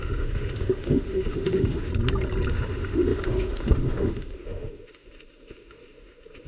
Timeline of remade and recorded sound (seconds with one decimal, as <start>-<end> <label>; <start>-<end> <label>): 0.0-1.9 remade; 1.9-2.5 recorded; 2.5-6.5 remade